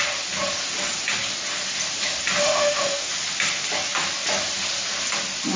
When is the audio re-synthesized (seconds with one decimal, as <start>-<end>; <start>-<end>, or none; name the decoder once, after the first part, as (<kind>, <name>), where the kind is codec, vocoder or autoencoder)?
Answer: 2.4-3.1 (autoencoder, DAC-VAE)